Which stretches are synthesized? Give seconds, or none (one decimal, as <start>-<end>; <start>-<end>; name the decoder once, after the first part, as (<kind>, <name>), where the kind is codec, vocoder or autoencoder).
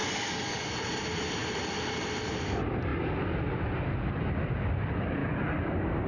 0.0-0.7 (codec, DAC)